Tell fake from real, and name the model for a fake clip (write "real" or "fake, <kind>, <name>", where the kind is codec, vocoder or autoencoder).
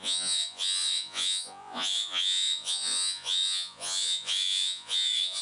fake, vocoder, Vocos